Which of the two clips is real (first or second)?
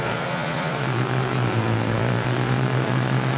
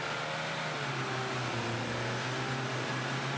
second